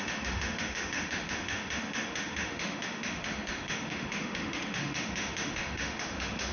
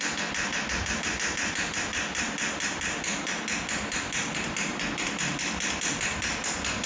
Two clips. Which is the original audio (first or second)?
second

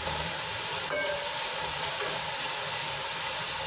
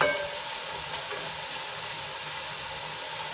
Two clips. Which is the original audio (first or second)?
second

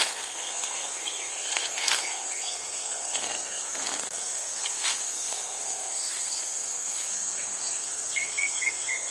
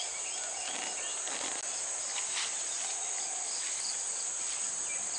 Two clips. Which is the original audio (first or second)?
second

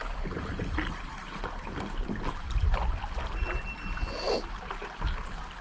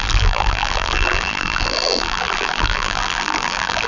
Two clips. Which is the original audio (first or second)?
first